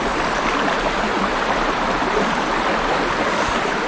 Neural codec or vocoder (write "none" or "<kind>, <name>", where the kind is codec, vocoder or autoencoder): none